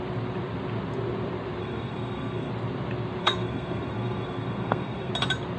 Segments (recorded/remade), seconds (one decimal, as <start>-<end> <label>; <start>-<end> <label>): 0.0-1.6 recorded; 1.6-2.5 remade; 2.5-3.2 recorded; 3.2-5.1 remade; 5.1-5.6 recorded